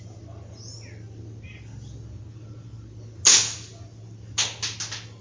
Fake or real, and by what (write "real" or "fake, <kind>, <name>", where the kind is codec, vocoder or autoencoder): real